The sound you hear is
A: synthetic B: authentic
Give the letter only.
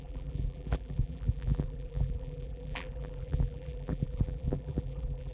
A